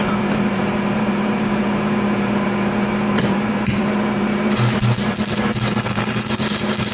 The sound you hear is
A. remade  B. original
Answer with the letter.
A